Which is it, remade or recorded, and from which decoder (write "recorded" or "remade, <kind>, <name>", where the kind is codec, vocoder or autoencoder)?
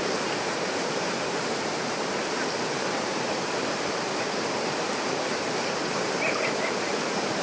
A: remade, vocoder, BigVGAN v2